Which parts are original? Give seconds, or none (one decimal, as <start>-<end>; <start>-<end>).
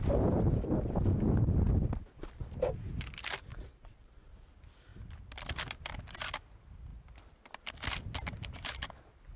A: 0.0-3.5; 4.3-9.4